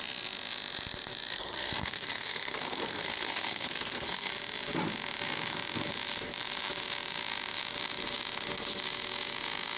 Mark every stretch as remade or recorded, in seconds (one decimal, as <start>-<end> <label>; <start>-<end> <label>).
0.0-1.3 recorded; 1.3-4.3 remade; 4.3-9.8 recorded